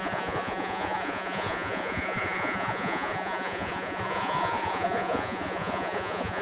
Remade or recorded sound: remade